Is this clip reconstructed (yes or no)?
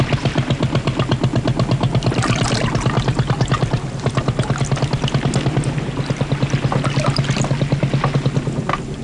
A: no